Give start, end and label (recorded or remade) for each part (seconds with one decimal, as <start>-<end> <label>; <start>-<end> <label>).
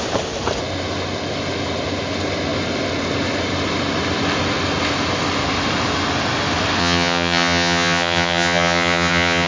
0.0-6.8 recorded; 6.8-9.5 remade